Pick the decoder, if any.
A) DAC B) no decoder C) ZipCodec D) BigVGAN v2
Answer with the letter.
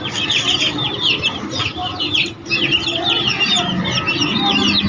B